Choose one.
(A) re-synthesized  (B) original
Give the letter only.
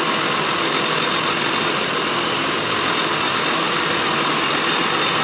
B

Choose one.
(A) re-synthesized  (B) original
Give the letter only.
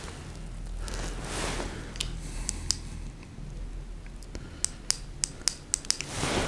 B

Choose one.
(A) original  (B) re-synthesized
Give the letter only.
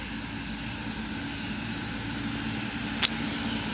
A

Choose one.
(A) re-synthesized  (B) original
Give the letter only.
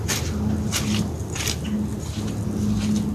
B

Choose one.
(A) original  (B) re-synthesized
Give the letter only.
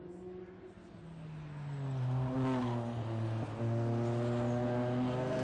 A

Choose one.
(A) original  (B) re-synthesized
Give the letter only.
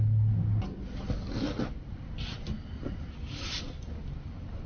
A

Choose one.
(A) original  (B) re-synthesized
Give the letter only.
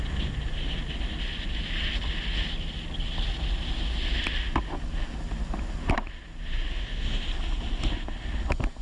A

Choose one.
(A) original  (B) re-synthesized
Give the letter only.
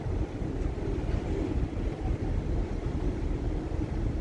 A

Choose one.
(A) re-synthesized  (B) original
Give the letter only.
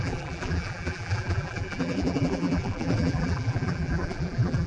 A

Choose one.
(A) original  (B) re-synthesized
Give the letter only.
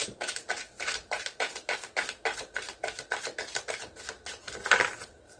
A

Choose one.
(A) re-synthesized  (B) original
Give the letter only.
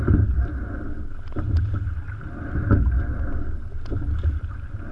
B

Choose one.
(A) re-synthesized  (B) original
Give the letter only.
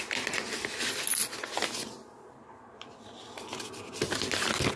B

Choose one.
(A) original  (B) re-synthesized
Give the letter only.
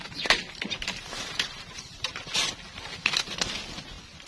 A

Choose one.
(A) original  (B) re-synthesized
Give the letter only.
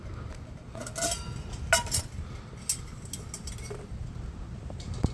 A